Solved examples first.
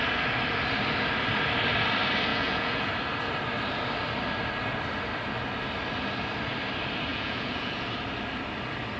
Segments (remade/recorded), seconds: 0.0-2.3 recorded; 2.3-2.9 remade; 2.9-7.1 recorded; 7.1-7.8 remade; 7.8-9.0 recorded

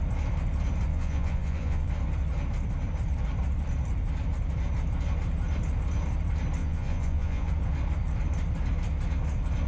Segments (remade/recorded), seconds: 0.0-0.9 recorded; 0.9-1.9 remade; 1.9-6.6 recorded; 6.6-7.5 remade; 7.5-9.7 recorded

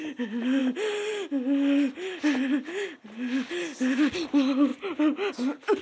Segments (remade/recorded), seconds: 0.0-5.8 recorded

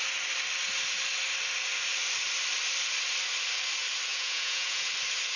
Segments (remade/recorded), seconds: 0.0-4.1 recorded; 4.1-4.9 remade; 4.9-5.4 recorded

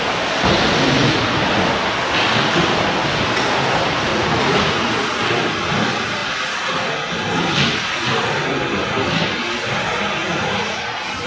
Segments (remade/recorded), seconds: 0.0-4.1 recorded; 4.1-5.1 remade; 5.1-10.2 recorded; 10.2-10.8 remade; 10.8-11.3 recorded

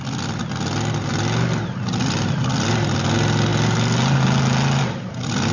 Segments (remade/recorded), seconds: 0.0-5.5 recorded

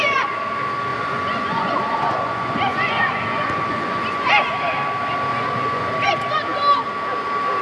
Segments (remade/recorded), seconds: 0.0-0.9 recorded; 0.9-4.3 remade; 4.3-5.3 recorded; 5.3-5.9 remade; 5.9-7.6 recorded

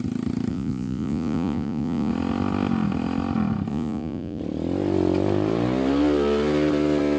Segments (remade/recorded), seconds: 0.0-0.5 recorded; 0.5-2.1 remade; 2.1-3.7 recorded; 3.7-4.4 remade; 4.4-7.2 recorded